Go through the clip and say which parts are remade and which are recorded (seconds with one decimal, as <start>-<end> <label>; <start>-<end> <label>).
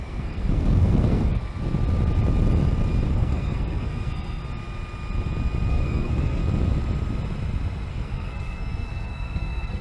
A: 0.0-1.4 remade; 1.4-3.1 recorded; 3.1-4.4 remade; 4.4-5.7 recorded; 5.7-6.4 remade; 6.4-7.9 recorded; 7.9-9.8 remade